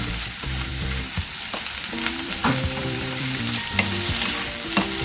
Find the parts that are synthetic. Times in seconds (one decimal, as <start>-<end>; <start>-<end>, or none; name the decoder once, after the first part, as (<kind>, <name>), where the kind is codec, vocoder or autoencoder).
0.7-3.7 (vocoder, BigVGAN v2)